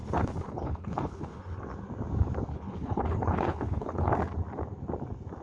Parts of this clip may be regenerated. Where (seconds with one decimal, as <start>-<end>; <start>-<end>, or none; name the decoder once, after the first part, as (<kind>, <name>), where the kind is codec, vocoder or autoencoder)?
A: 0.0-1.6 (codec, HILCodec); 2.5-4.1